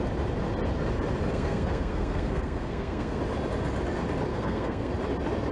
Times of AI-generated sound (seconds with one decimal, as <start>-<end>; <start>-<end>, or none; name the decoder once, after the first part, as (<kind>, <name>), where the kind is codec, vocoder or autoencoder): 1.3-3.2 (codec, SNAC); 4.3-4.9